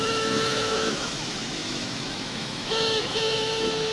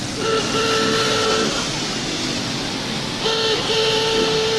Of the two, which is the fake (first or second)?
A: first